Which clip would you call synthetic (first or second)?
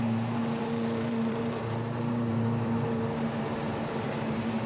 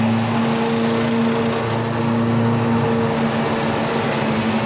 first